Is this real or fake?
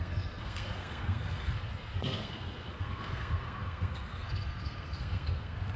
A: fake